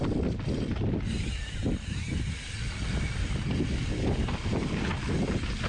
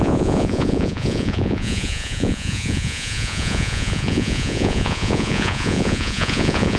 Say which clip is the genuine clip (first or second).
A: first